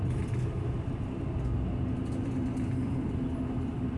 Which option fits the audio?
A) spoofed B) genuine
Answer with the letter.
B